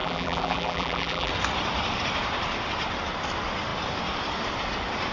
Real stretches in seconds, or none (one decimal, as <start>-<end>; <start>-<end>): 1.3-5.1